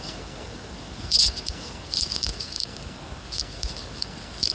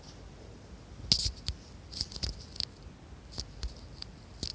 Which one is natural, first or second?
second